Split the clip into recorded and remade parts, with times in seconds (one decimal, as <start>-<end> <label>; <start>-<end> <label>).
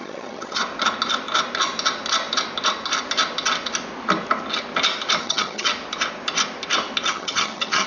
0.0-0.6 remade; 0.6-5.2 recorded; 5.2-5.7 remade; 5.7-7.1 recorded; 7.1-7.9 remade